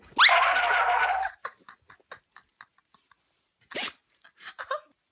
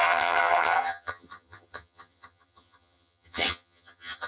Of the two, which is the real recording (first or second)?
first